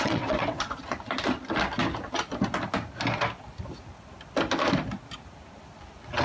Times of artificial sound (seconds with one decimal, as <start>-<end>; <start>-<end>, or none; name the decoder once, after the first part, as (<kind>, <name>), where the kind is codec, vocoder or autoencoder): 0.0-0.9 (vocoder, WaveNeXt)